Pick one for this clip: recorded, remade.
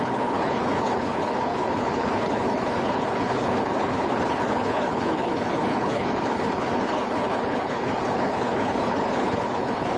remade